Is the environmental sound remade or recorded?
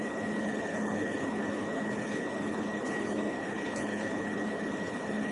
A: remade